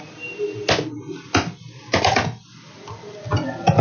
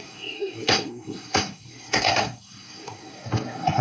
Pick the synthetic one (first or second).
second